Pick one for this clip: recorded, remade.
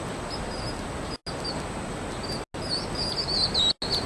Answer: recorded